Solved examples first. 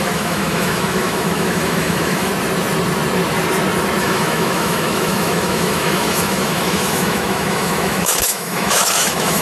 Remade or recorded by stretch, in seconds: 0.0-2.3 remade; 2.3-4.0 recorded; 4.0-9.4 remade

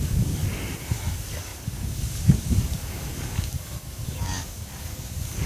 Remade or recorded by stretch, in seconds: 0.0-0.4 remade; 0.4-1.1 recorded; 1.1-5.5 remade

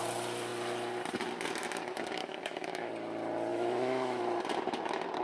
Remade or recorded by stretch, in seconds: 0.0-2.2 recorded; 2.2-2.9 remade; 2.9-3.5 recorded; 3.5-4.2 remade; 4.2-5.2 recorded

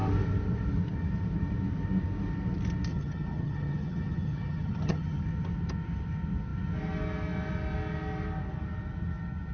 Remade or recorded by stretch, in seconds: 0.0-2.9 recorded; 2.9-5.2 remade; 5.2-9.5 recorded

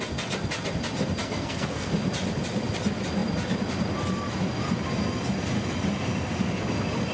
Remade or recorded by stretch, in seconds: 0.0-1.2 recorded; 1.2-1.9 remade; 1.9-7.1 recorded

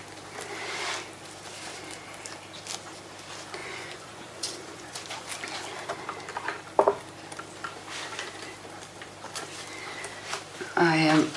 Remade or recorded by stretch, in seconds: 0.0-3.6 recorded; 3.6-5.3 remade; 5.3-11.4 recorded

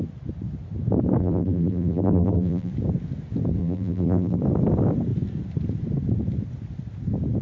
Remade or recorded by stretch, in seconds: 0.0-1.2 recorded; 1.2-2.7 remade; 2.7-3.6 recorded; 3.6-4.4 remade; 4.4-7.4 recorded